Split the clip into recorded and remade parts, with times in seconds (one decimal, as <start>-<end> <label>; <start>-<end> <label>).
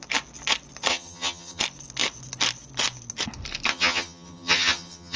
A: 0.0-0.9 recorded; 0.9-1.6 remade; 1.6-3.7 recorded; 3.7-5.2 remade